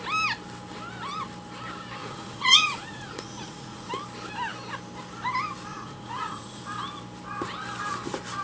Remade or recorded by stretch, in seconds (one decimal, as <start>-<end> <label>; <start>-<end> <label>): 0.0-2.0 recorded; 2.0-3.9 remade; 3.9-5.7 recorded; 5.7-6.6 remade; 6.6-8.4 recorded